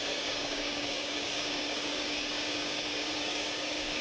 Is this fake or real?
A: fake